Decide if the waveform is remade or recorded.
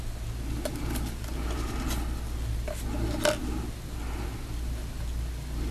recorded